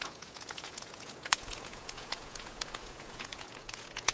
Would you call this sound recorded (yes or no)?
no